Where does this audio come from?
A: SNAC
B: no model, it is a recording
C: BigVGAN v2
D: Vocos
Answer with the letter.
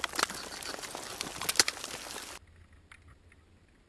B